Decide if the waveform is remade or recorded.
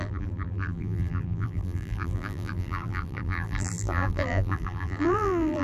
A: remade